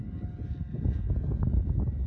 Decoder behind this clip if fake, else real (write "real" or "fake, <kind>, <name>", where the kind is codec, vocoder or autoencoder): real